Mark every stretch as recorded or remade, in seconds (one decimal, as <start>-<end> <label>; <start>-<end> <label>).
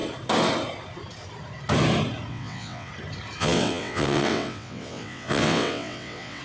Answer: 0.0-2.3 recorded; 2.3-2.9 remade; 2.9-3.4 recorded; 3.4-6.4 remade